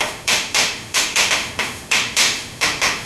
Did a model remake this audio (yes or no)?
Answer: yes